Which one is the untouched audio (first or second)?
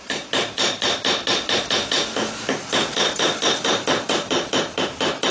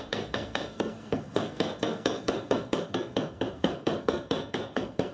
first